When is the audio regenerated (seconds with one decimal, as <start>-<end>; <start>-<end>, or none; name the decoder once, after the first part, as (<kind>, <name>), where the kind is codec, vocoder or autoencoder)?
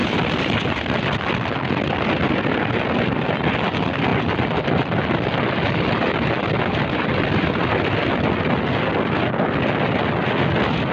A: 0.0-1.0 (vocoder, BigVGAN v2); 4.1-8.4